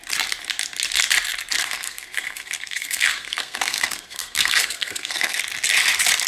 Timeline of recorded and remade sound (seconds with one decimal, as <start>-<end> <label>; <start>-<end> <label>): 0.0-1.6 recorded; 1.6-5.4 remade; 5.4-6.3 recorded